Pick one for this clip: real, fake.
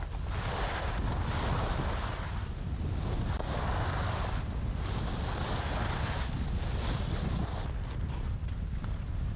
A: real